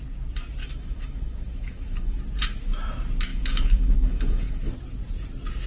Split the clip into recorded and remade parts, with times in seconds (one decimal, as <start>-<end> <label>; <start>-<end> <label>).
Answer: 0.0-0.6 recorded; 0.6-2.2 remade; 2.2-3.3 recorded; 3.3-4.7 remade; 4.7-5.7 recorded